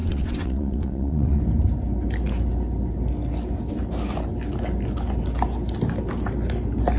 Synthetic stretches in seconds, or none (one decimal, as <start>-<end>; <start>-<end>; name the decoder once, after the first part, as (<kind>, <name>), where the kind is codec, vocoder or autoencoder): 0.0-1.4 (vocoder, WaveNeXt)